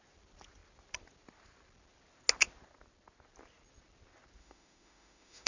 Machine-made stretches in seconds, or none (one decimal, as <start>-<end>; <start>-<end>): 4.4-5.5